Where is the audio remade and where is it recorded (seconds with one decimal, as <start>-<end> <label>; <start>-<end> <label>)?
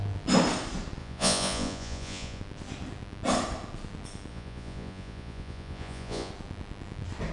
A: 0.0-1.0 recorded; 1.0-2.4 remade; 2.4-4.3 recorded; 4.3-6.3 remade; 6.3-7.3 recorded